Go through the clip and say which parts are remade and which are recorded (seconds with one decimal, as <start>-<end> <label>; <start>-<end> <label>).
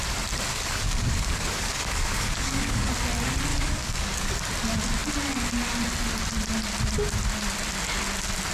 0.0-0.5 recorded; 0.5-2.9 remade; 2.9-3.5 recorded; 3.5-4.5 remade; 4.5-8.5 recorded